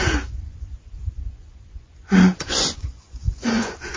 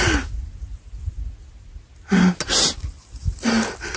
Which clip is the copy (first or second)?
first